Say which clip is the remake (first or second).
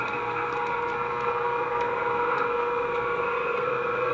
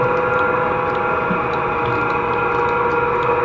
first